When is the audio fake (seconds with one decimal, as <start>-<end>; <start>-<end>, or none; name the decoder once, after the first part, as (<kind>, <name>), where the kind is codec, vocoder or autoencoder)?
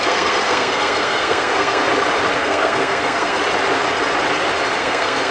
0.0-1.9 (codec, SNAC); 2.4-3.4; 4.8-5.3